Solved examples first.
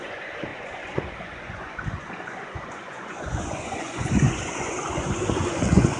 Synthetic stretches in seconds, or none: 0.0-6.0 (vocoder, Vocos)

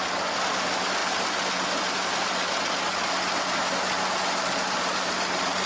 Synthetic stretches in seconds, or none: none

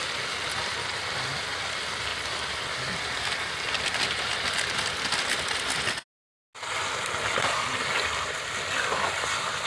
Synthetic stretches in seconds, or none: none

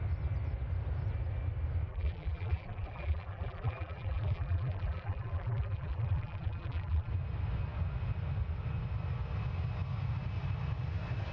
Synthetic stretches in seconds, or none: 1.9-7.1 (vocoder, BigVGAN v2)

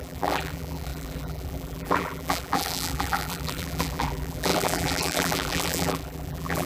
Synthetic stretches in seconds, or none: 0.0-6.7 (vocoder, BigVGAN v2)